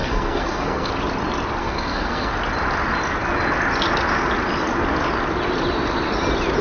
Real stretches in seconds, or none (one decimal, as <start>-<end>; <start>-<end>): 0.9-1.6; 2.3-6.6